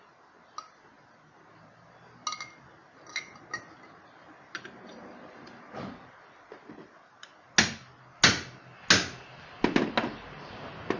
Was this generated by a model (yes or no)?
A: no